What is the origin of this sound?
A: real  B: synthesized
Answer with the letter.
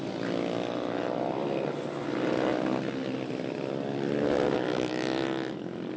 A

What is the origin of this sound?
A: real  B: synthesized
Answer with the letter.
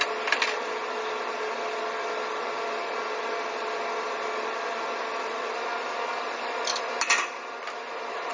A